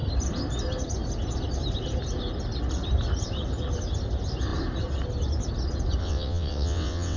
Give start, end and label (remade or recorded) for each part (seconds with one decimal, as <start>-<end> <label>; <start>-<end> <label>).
0.0-6.0 recorded; 6.0-7.2 remade